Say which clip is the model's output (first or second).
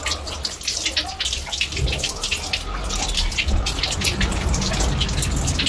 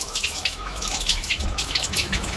second